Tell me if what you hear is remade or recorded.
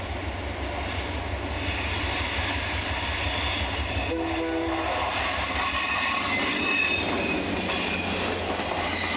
recorded